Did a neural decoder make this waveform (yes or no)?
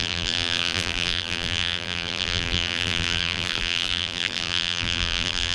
yes